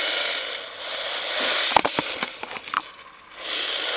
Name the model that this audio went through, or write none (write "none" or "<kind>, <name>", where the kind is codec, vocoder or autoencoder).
none